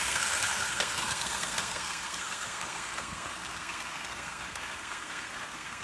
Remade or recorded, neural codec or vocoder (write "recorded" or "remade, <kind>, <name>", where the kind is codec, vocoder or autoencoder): remade, codec, SNAC